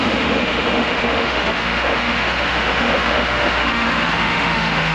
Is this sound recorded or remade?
remade